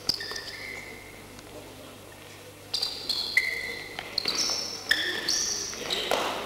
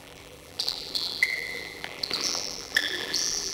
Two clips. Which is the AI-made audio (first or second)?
second